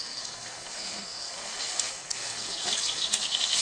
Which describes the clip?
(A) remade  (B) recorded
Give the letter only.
A